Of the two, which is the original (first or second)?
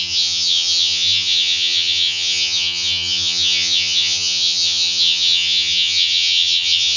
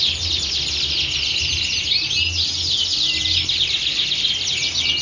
second